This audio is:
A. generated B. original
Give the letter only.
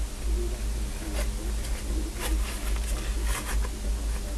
B